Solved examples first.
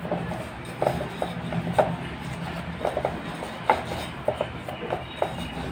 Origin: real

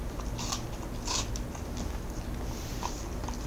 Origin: real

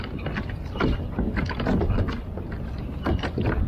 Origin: real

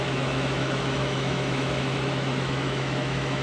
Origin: fake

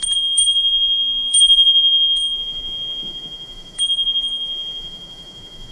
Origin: fake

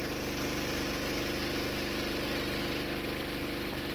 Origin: real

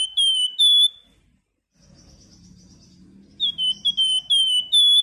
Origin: real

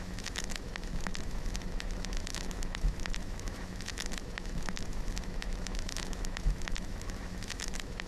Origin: fake